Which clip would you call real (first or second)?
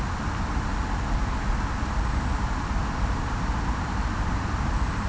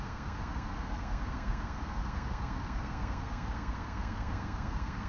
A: first